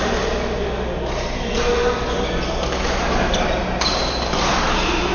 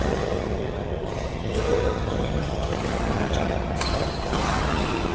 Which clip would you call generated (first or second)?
second